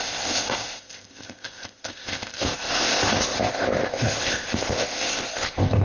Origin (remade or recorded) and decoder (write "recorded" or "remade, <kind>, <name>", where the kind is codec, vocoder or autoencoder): remade, codec, ZipCodec